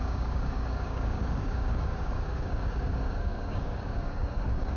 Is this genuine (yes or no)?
no